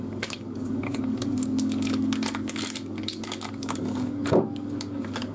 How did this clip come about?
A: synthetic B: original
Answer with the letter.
A